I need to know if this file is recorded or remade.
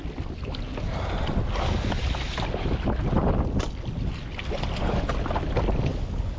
recorded